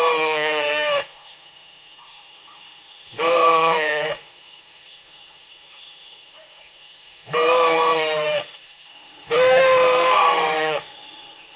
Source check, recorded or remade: remade